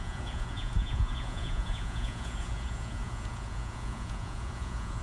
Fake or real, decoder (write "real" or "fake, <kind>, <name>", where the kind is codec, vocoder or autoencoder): fake, vocoder, Vocos